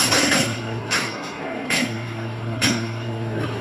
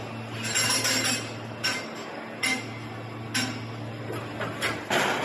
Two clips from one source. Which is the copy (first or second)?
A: first